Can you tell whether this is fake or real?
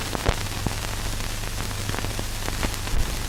real